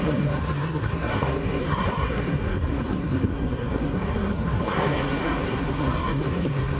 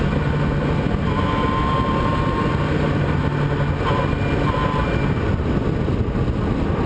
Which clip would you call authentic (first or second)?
second